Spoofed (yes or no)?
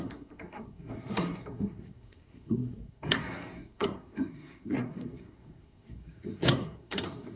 yes